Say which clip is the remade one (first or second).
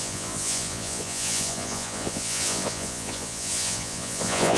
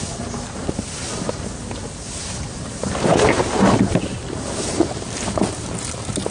first